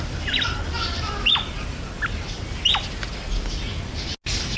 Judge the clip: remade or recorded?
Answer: recorded